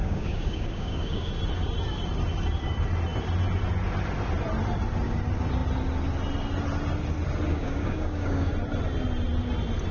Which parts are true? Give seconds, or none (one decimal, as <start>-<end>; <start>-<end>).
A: 1.3-7.5; 8.5-9.9